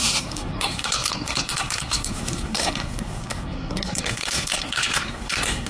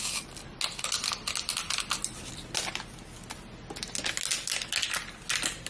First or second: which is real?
second